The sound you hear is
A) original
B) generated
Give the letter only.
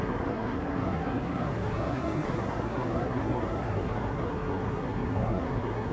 B